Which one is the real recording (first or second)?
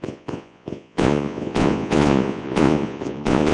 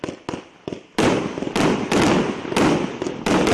second